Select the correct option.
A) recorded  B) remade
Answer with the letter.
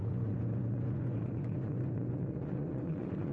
B